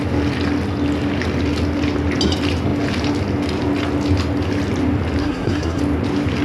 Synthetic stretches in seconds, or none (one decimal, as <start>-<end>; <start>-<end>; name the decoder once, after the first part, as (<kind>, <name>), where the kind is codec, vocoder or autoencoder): 5.2-5.8 (codec, SNAC)